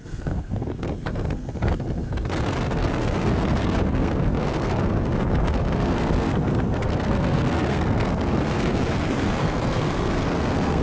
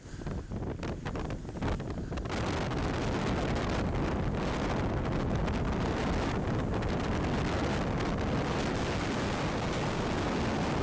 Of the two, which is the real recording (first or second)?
second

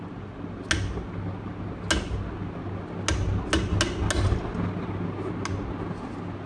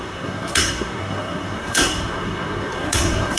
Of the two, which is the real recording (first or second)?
first